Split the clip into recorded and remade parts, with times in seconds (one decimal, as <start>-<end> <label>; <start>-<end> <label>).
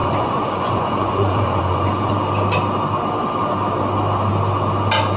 0.0-2.1 remade; 2.1-5.2 recorded